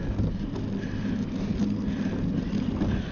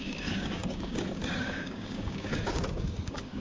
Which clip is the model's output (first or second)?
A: second